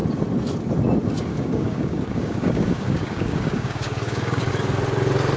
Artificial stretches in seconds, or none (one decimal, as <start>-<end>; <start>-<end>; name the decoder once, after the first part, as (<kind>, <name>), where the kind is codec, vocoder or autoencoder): 1.3-4.5 (codec, DAC)